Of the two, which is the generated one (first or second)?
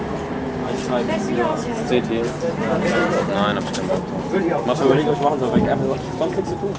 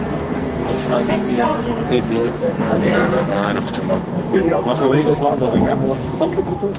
second